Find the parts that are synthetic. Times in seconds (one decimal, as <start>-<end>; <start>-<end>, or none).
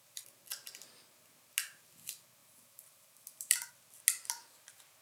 2.4-3.7